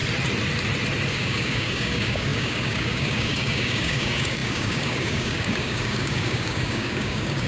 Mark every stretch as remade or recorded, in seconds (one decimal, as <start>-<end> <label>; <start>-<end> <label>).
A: 0.0-1.1 recorded; 1.1-7.5 remade